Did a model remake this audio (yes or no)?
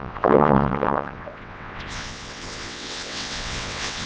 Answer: yes